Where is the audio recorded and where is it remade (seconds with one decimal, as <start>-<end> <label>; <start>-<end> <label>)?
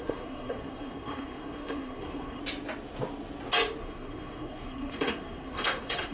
0.0-2.4 remade; 2.4-3.8 recorded; 3.8-6.1 remade